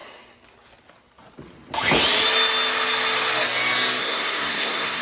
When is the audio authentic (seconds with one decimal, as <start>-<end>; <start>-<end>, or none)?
0.0-4.0